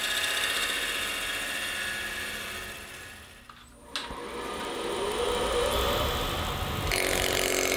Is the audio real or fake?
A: real